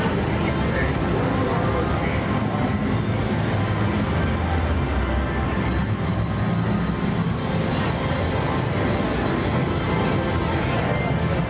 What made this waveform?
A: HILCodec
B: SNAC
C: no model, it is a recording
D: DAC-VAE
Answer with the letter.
C